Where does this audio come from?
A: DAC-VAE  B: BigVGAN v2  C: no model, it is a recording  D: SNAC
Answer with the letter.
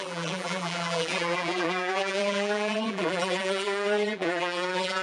B